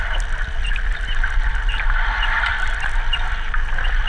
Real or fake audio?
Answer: real